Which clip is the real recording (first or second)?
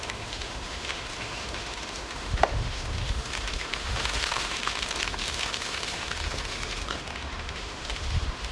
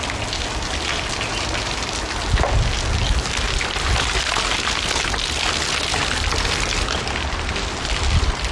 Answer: second